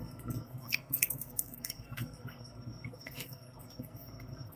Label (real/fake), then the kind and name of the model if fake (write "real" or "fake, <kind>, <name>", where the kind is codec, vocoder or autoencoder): fake, codec, SNAC